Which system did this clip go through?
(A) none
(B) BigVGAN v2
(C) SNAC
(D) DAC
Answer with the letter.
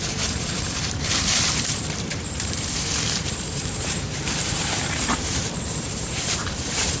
B